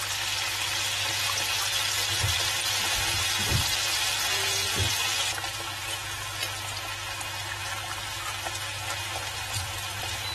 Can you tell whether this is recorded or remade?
recorded